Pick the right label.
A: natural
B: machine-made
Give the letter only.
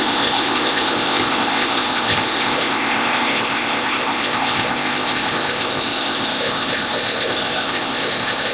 B